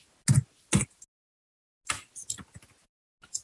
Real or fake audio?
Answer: real